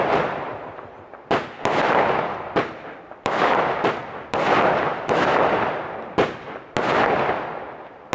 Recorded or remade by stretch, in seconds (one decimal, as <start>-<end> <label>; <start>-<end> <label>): 0.0-4.0 recorded; 4.0-6.7 remade; 6.7-8.1 recorded